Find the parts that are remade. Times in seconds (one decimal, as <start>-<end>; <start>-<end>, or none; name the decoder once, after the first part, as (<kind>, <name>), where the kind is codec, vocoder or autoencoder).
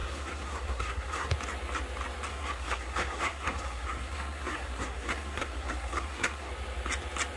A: 0.0-1.3 (codec, SNAC); 2.3-6.5